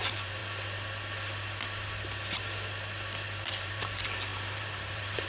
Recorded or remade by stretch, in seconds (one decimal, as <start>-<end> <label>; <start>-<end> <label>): 0.0-0.4 remade; 0.4-3.5 recorded; 3.5-5.3 remade